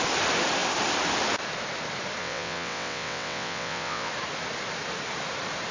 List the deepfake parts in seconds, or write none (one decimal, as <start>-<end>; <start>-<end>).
2.2-4.1